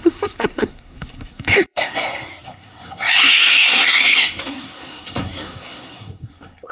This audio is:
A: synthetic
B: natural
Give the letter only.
A